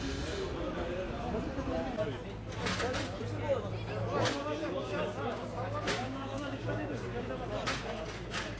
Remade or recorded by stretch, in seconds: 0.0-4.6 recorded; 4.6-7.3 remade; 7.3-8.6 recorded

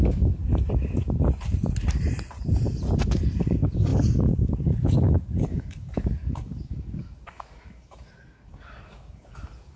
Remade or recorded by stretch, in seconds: 0.0-0.4 remade; 0.4-3.4 recorded; 3.4-9.8 remade

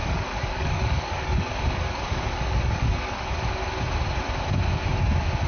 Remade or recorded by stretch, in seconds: 0.0-3.3 remade; 3.3-5.5 recorded